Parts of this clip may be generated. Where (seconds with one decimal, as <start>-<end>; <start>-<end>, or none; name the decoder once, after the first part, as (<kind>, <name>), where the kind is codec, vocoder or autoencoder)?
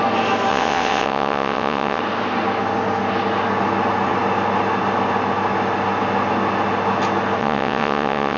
0.5-2.0 (vocoder, WaveNeXt); 7.4-8.4